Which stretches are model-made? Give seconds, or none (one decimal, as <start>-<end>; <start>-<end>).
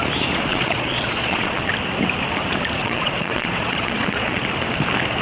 0.5-1.7; 2.8-4.4